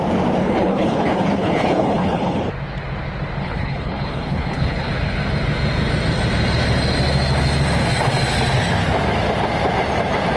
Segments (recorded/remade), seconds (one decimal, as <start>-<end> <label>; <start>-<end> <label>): 0.0-0.4 recorded; 0.4-2.4 remade; 2.4-3.4 recorded; 3.4-4.9 remade; 4.9-10.4 recorded